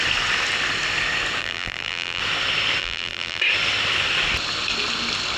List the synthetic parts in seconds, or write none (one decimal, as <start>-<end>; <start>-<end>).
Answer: 1.4-2.2; 2.8-3.4